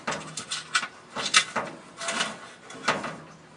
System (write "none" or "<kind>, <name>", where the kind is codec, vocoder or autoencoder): none